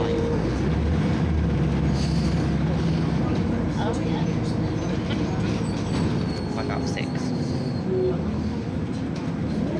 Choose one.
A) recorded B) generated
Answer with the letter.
A